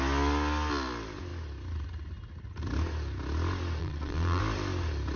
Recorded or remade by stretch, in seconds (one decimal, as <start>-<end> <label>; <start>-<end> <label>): 0.0-3.8 recorded; 3.8-4.4 remade; 4.4-5.2 recorded